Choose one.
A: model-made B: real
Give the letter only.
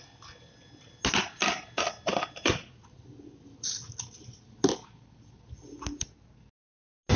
B